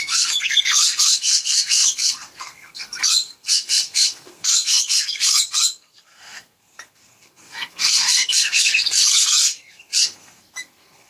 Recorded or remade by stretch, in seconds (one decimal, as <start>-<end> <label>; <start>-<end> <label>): 0.0-11.1 remade